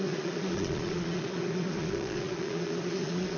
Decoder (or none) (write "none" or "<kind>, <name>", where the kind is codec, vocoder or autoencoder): vocoder, Vocos